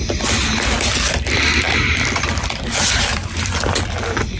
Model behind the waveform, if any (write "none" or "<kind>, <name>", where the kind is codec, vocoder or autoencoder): vocoder, BigVGAN v2